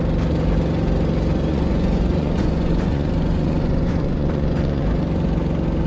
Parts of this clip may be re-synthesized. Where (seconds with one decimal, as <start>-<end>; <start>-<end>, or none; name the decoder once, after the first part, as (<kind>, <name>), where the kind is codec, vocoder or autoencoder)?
1.5-5.0 (vocoder, Vocos)